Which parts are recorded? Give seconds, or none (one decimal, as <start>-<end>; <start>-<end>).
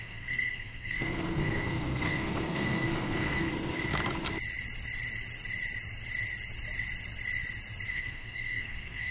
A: 3.5-7.9